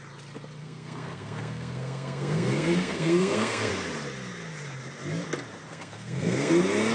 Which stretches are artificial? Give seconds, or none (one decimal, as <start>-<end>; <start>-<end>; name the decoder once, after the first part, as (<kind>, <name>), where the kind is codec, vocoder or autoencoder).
0.6-3.7 (codec, SNAC); 5.7-6.5